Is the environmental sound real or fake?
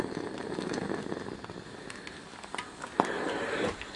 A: real